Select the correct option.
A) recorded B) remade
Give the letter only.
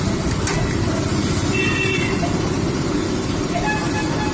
A